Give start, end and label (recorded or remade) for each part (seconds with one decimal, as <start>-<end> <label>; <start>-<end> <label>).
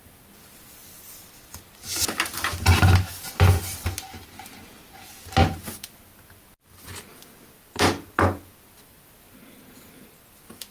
0.0-10.7 recorded